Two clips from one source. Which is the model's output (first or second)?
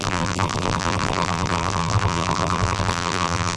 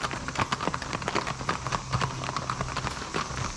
first